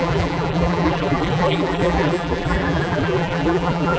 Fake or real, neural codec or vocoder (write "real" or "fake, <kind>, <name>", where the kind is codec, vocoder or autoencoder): fake, vocoder, BigVGAN v2